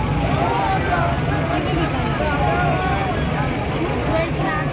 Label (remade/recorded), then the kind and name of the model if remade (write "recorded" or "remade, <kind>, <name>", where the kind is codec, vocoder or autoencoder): recorded